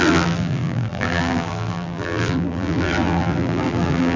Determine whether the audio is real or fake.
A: fake